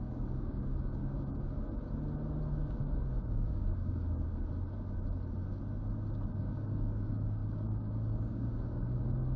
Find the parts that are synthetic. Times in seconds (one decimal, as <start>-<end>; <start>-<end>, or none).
0.0-1.0; 2.5-4.3; 6.4-9.4